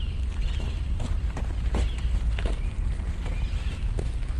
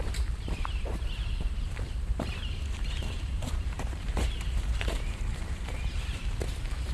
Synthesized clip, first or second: second